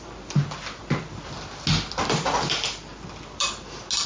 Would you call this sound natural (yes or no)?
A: yes